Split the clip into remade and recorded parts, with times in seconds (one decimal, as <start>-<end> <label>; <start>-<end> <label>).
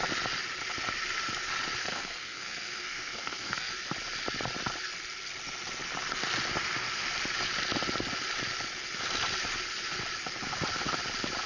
0.0-1.8 recorded; 1.8-3.7 remade; 3.7-11.5 recorded